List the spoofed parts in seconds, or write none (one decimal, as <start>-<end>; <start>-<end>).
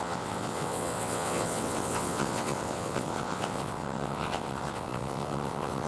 0.0-5.9